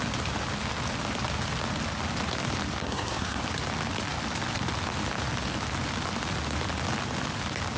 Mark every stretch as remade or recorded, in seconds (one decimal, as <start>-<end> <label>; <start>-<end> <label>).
0.0-2.8 recorded; 2.8-3.4 remade; 3.4-7.8 recorded